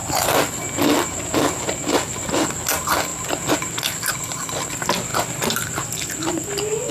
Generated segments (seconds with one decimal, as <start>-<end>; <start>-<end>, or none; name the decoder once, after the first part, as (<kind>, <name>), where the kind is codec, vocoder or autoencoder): none